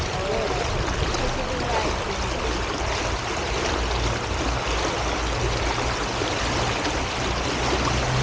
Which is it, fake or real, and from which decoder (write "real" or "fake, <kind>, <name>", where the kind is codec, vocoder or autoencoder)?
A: real